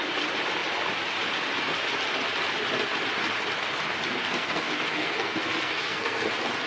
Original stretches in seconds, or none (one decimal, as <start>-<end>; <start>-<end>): 0.0-4.2; 6.3-6.7